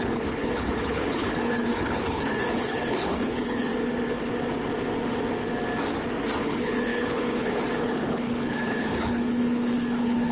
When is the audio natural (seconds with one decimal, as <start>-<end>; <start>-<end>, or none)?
3.7-6.4